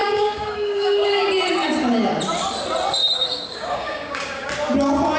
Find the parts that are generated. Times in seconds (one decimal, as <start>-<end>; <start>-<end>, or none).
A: 0.0-1.3; 3.0-4.5